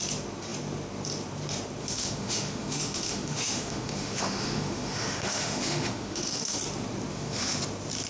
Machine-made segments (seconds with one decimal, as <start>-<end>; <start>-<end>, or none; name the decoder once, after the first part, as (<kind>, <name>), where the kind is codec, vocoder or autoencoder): 1.8-6.6 (autoencoder, DAC-VAE); 7.1-7.6